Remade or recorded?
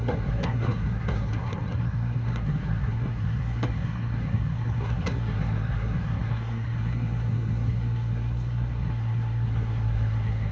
remade